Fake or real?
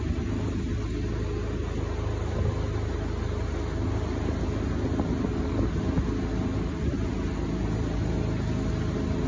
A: real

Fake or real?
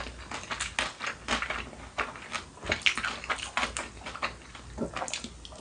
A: real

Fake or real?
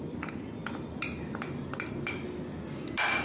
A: real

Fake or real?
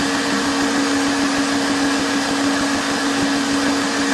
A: real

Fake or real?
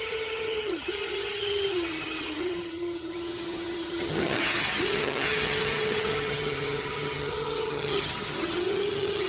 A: fake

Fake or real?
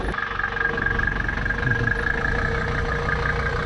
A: real